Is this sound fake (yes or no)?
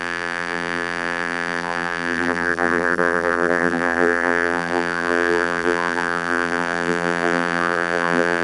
yes